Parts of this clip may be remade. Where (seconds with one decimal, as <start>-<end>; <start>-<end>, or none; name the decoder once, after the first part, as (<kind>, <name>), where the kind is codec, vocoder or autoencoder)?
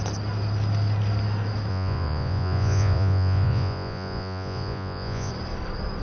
1.7-5.3 (vocoder, Vocos)